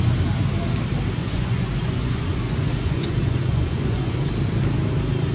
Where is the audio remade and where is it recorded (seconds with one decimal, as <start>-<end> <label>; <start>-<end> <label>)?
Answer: 0.0-1.2 recorded; 1.2-4.3 remade; 4.3-5.3 recorded